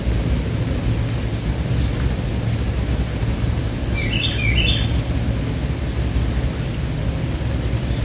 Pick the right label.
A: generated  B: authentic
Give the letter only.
B